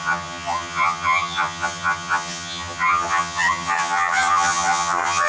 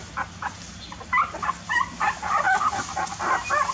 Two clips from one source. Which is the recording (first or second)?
second